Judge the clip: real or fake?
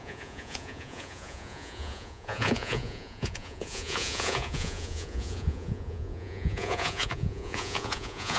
fake